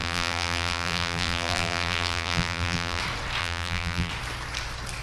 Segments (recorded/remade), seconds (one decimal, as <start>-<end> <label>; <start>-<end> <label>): 0.0-3.0 remade; 3.0-3.4 recorded; 3.4-4.1 remade; 4.1-5.0 recorded

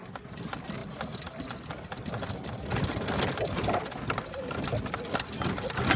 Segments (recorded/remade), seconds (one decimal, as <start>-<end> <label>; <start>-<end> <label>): 0.0-6.0 recorded

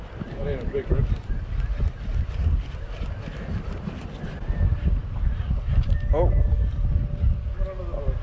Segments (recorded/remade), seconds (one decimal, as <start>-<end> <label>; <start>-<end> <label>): 0.0-8.2 recorded

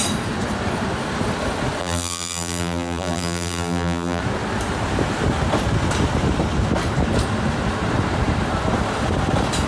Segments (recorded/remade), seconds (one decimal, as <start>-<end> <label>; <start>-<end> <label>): 0.0-1.8 recorded; 1.8-4.2 remade; 4.2-9.7 recorded

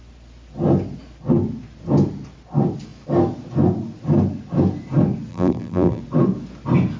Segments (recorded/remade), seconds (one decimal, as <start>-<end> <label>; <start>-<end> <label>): 0.0-5.3 recorded; 5.3-6.0 remade; 6.0-7.0 recorded

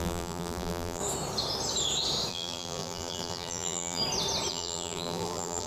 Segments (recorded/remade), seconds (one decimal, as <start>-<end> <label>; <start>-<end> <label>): 0.0-1.0 remade; 1.0-2.3 recorded; 2.3-4.0 remade; 4.0-4.5 recorded; 4.5-5.7 remade